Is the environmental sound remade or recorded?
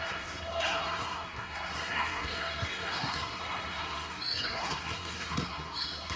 remade